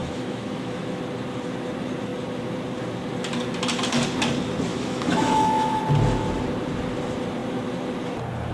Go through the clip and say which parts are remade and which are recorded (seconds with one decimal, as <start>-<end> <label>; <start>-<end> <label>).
0.0-1.0 remade; 1.0-4.7 recorded; 4.7-5.8 remade; 5.8-8.5 recorded